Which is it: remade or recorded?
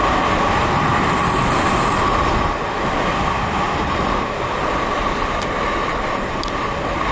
recorded